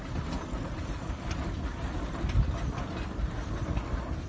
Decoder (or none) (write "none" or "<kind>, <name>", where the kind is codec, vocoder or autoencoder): none